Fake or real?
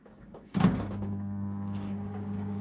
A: fake